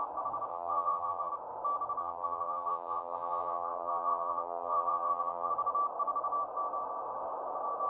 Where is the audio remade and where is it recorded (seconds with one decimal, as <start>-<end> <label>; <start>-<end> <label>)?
0.0-0.5 recorded; 0.5-1.3 remade; 1.3-2.0 recorded; 2.0-5.5 remade; 5.5-7.9 recorded

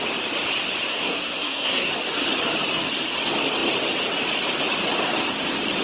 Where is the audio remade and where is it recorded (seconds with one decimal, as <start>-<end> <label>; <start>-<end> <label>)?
0.0-0.9 recorded; 0.9-1.9 remade; 1.9-5.8 recorded

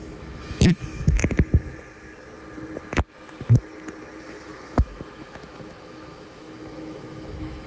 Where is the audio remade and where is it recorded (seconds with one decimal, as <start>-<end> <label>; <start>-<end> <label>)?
0.0-1.2 remade; 1.2-4.2 recorded; 4.2-7.7 remade

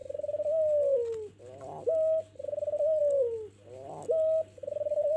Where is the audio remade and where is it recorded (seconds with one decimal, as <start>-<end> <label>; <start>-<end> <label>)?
0.0-5.2 recorded